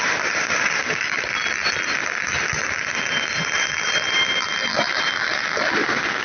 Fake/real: real